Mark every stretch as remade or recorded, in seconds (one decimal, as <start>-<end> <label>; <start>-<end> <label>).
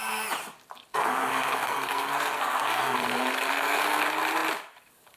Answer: 0.0-0.9 recorded; 0.9-4.0 remade; 4.0-5.2 recorded